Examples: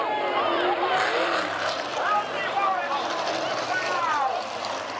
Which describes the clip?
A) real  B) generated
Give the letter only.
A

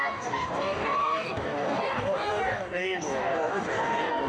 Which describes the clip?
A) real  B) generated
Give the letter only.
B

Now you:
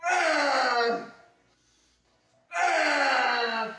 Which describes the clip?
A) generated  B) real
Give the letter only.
B